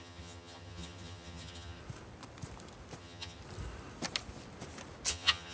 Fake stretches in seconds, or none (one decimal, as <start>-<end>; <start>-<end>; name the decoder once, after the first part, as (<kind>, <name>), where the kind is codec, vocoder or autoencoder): 0.0-1.8 (vocoder, HiFi-GAN); 3.0-3.4; 5.1-5.5